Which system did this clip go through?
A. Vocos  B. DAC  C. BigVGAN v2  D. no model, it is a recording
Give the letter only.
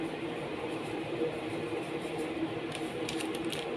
C